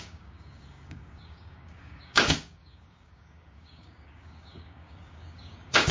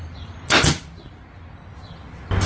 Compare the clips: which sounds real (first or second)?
second